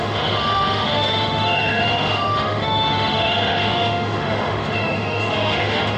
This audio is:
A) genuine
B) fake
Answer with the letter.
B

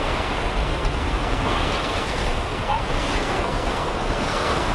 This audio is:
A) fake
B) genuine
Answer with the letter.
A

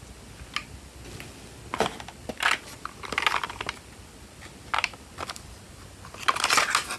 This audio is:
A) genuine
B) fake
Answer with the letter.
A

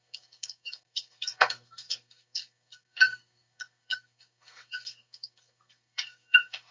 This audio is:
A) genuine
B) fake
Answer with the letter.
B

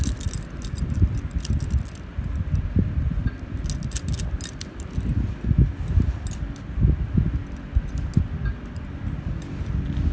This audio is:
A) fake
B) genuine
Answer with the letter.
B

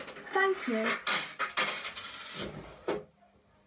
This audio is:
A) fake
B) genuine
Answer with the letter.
B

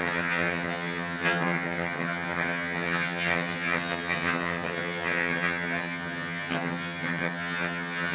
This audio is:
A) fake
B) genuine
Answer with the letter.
A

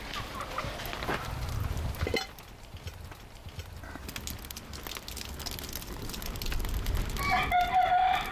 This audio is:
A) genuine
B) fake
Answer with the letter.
A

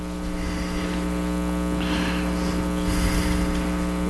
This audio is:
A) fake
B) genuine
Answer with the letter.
B